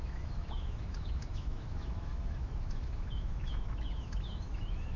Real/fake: fake